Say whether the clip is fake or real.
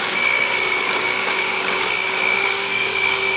fake